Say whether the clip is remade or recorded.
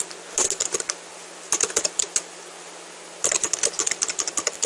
recorded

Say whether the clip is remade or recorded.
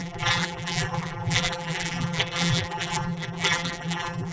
remade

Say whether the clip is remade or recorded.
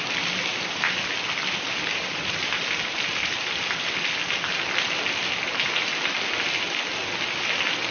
recorded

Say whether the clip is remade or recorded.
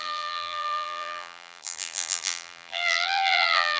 remade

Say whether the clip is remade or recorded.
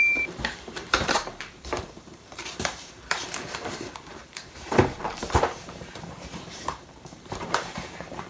remade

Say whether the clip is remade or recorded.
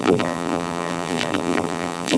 remade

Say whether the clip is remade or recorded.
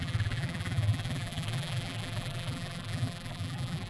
remade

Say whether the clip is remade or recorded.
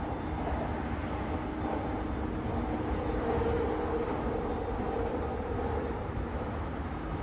recorded